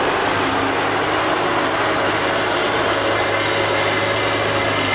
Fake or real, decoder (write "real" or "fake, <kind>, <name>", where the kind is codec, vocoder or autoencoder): real